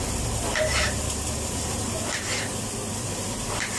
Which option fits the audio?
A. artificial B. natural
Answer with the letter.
A